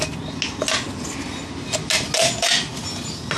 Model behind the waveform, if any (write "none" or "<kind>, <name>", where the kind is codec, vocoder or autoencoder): none